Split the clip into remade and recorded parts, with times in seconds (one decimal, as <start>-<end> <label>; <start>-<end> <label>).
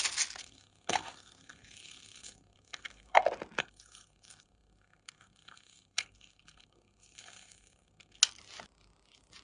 0.0-0.4 recorded; 0.4-3.2 remade; 3.2-3.6 recorded; 3.6-8.2 remade; 8.2-9.4 recorded